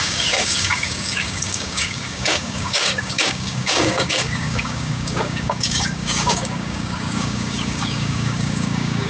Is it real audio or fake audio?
fake